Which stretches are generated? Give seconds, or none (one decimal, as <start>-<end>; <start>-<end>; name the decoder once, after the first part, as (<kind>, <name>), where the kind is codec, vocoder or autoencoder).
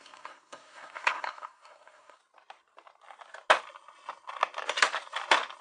0.0-2.2 (codec, SNAC)